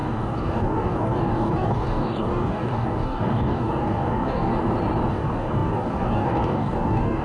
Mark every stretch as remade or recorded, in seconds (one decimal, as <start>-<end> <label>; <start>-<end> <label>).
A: 0.0-4.5 remade; 4.5-5.1 recorded; 5.1-7.2 remade